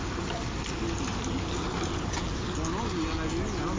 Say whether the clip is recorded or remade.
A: recorded